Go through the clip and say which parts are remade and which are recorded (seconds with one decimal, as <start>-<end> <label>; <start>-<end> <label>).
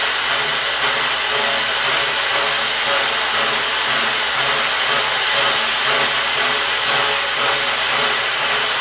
0.0-8.8 recorded